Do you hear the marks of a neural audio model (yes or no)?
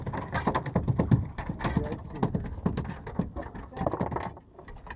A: no